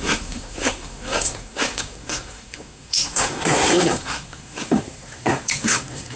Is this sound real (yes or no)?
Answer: no